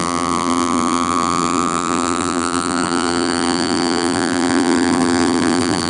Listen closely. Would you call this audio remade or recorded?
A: remade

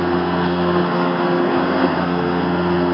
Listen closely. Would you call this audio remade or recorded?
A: remade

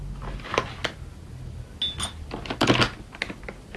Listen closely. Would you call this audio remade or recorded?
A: recorded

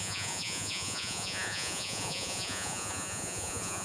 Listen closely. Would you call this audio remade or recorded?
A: remade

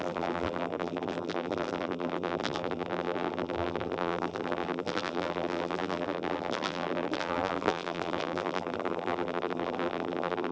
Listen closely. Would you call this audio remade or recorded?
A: remade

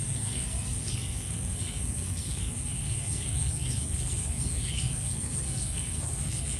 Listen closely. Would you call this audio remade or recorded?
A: remade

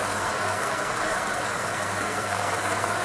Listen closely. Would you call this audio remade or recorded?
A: remade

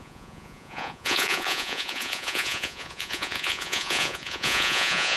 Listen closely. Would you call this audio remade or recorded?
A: remade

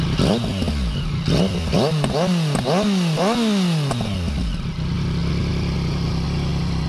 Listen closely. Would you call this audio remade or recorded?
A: recorded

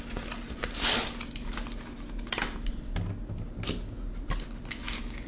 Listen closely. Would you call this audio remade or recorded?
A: recorded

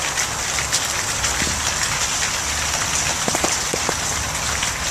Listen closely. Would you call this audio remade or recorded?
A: recorded